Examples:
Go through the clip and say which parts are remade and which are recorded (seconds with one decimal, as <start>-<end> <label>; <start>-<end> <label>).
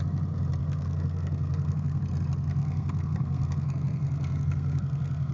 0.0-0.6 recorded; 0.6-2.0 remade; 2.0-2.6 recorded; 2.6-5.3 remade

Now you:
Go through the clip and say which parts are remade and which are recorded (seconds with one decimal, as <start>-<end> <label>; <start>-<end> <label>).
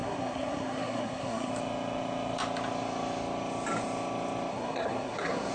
0.0-1.5 remade; 1.5-4.5 recorded; 4.5-5.5 remade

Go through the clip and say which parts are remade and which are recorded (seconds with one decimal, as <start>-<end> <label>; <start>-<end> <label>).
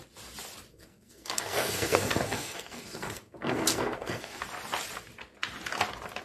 0.0-0.7 recorded; 0.7-4.4 remade; 4.4-6.2 recorded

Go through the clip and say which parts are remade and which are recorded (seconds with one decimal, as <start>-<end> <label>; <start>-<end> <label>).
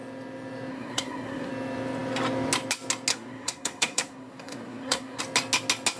0.0-0.7 recorded; 0.7-1.5 remade; 1.5-3.1 recorded; 3.1-5.2 remade; 5.2-6.0 recorded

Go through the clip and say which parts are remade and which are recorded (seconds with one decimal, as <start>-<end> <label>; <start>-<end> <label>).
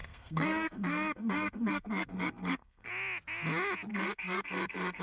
0.0-2.9 remade; 2.9-3.9 recorded; 3.9-5.0 remade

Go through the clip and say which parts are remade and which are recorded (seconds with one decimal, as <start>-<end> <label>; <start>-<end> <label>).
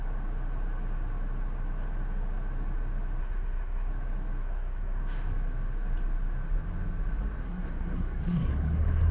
0.0-3.2 recorded; 3.2-3.9 remade; 3.9-4.4 recorded; 4.4-5.0 remade; 5.0-7.4 recorded; 7.4-9.1 remade